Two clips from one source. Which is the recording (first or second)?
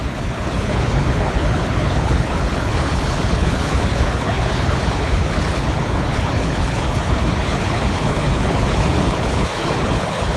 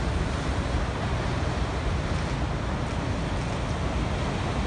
second